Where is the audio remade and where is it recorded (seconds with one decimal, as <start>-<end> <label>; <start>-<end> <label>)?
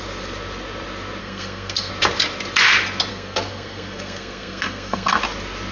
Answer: 0.0-1.2 recorded; 1.2-1.9 remade; 1.9-3.1 recorded; 3.1-5.2 remade; 5.2-5.7 recorded